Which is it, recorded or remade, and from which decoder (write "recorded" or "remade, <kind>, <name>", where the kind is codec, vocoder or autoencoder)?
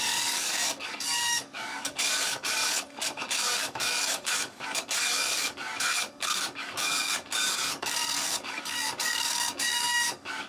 remade, codec, DAC